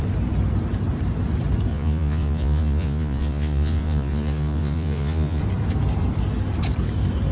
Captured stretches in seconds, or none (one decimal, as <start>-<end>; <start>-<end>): 0.0-1.7; 5.4-7.3